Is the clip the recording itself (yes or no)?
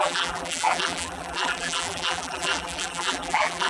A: no